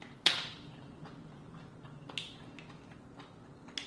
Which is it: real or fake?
real